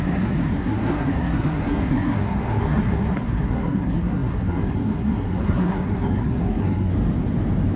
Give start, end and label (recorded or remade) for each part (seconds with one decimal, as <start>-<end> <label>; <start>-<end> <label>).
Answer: 0.0-6.9 remade; 6.9-7.8 recorded